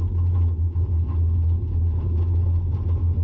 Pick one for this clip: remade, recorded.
recorded